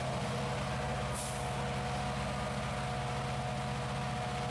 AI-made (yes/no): no